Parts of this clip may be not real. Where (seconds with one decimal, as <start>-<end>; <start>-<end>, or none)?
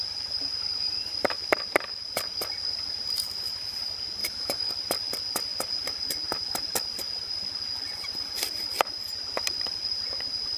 4.2-4.7